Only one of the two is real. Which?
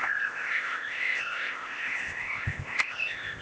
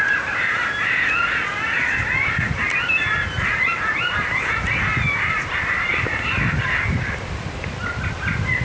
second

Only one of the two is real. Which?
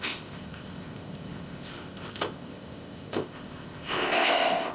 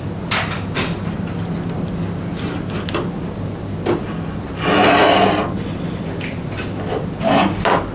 second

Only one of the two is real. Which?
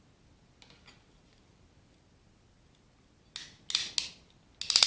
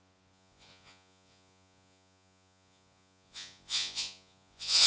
first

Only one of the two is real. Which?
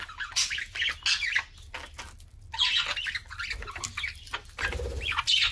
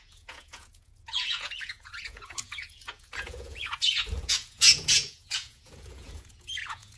first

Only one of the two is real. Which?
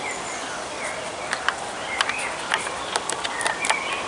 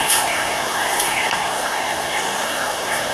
first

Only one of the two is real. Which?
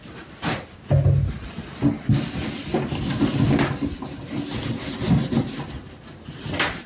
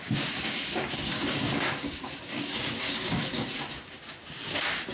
first